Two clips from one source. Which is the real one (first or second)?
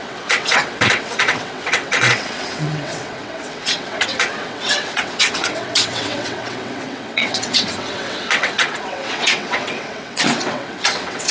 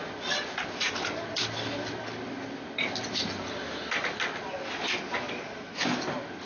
second